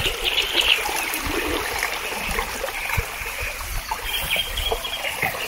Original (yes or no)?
no